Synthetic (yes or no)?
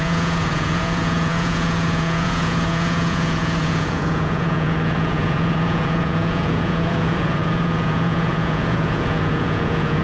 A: yes